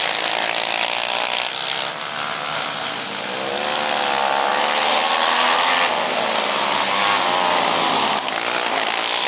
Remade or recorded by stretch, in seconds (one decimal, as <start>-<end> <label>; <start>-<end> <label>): 0.0-9.3 recorded